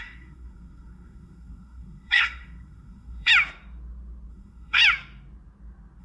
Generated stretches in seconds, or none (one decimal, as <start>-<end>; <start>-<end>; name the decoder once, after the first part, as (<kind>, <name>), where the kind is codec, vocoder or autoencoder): 0.0-3.3 (codec, SNAC); 4.3-4.8